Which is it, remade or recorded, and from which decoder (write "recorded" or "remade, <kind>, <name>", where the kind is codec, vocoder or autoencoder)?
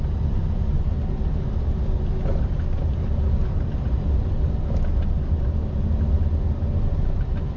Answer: recorded